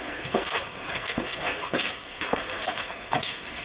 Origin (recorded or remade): remade